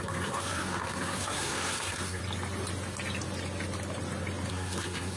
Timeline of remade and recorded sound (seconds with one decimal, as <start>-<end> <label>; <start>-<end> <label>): 0.0-2.2 remade; 2.2-4.5 recorded; 4.5-5.2 remade

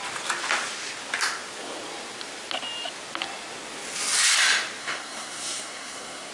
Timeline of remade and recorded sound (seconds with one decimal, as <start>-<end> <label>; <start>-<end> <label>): 0.0-4.8 recorded; 4.8-6.3 remade

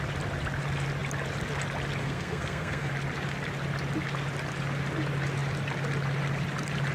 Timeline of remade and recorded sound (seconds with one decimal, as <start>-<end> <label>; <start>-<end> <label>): 0.0-2.0 recorded; 2.0-2.9 remade; 2.9-6.9 recorded

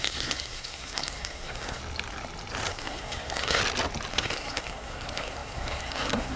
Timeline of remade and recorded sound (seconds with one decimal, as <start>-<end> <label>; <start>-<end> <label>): 0.0-1.8 remade; 1.8-2.7 recorded; 2.7-3.6 remade; 3.6-4.1 recorded; 4.1-6.4 remade